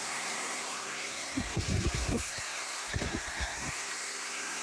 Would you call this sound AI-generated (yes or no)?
yes